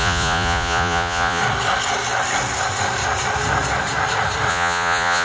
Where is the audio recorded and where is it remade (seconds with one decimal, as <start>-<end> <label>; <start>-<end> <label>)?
0.0-1.4 remade; 1.4-4.5 recorded; 4.5-5.2 remade